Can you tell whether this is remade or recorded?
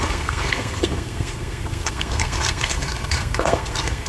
remade